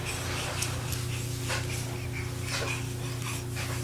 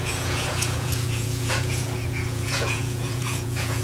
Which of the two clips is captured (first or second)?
first